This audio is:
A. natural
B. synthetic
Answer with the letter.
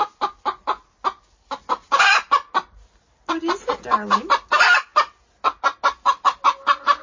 A